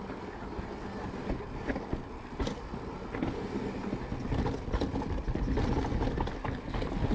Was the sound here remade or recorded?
recorded